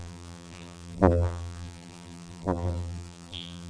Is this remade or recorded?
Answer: remade